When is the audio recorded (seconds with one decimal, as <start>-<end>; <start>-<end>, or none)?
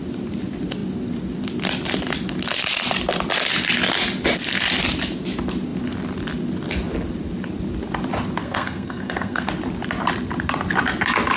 0.0-8.4; 9.5-11.4